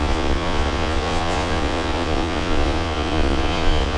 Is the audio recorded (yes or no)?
no